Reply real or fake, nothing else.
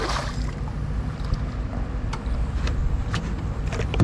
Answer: real